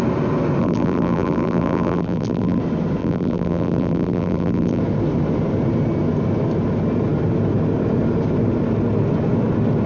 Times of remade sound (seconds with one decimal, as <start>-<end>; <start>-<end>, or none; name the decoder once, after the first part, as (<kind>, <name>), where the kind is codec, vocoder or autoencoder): 0.6-2.6 (vocoder, BigVGAN v2); 3.0-4.8